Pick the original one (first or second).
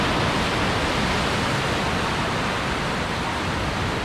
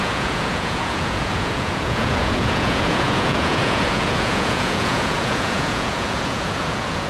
first